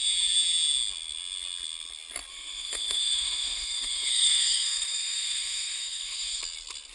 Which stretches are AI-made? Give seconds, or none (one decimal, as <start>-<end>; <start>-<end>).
2.3-6.4